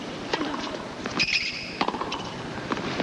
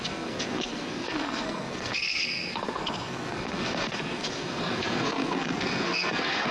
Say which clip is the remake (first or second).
second